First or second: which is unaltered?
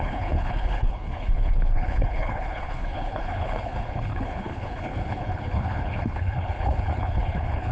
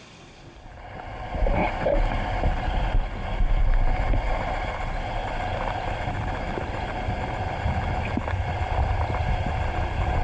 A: second